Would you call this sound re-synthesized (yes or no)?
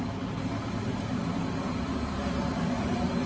no